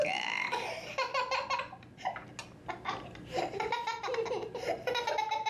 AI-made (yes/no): no